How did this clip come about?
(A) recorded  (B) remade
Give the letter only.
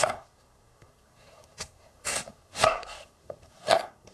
B